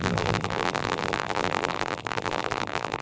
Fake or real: fake